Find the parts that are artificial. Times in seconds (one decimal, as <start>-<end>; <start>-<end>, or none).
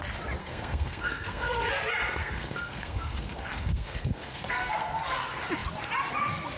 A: 0.4-1.7; 2.2-4.9